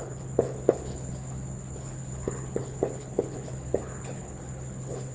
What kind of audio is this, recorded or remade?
remade